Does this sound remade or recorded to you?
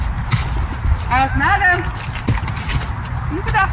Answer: recorded